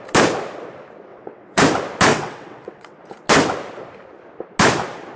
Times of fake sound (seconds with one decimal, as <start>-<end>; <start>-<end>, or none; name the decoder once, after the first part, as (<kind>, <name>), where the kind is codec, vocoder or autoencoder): 1.1-1.6 (vocoder, WaveNeXt); 2.1-3.0